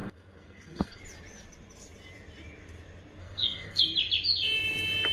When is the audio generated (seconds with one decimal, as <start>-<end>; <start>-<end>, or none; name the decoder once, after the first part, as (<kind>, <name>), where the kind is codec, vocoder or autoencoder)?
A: 0.0-1.0 (codec, SNAC); 3.2-3.8